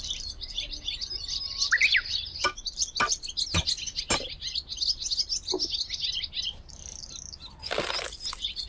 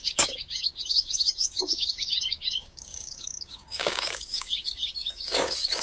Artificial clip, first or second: second